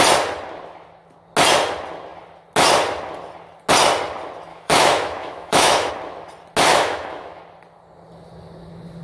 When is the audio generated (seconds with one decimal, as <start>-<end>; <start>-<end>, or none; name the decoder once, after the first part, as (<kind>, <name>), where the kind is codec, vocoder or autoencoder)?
4.5-5.9 (autoencoder, DAC-VAE); 6.7-7.4